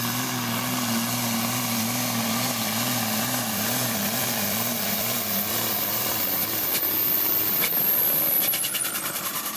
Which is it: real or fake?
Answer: fake